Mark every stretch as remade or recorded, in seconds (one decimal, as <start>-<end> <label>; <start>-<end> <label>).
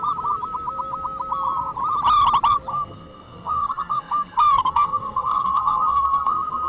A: 0.0-2.7 recorded; 2.7-6.7 remade